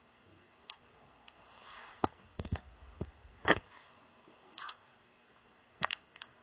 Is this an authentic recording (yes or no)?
no